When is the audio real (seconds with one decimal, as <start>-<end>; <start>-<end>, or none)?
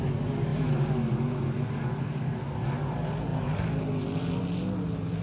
0.0-5.2